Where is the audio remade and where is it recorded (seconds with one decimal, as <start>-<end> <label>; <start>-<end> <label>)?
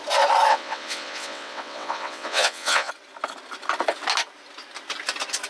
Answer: 0.0-0.5 recorded; 0.5-2.9 remade; 2.9-5.5 recorded